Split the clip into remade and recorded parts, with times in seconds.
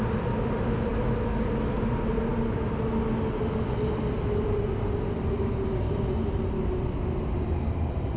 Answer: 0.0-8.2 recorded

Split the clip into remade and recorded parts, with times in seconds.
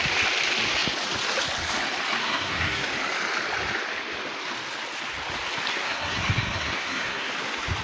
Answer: 0.0-2.2 recorded; 2.2-2.9 remade; 2.9-5.7 recorded; 5.7-7.3 remade; 7.3-7.8 recorded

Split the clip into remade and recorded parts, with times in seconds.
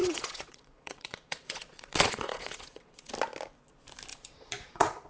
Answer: 0.0-3.1 remade; 3.1-4.1 recorded; 4.1-5.1 remade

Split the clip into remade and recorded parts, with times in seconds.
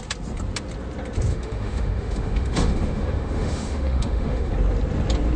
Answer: 0.0-1.3 recorded; 1.3-4.5 remade; 4.5-5.4 recorded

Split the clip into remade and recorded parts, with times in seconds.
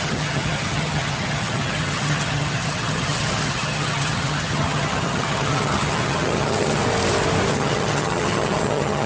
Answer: 0.0-6.8 remade; 6.8-7.5 recorded; 7.5-9.1 remade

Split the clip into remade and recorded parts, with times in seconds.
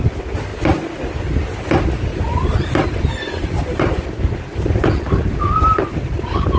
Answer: 0.0-2.1 recorded; 2.1-5.5 remade; 5.5-6.6 recorded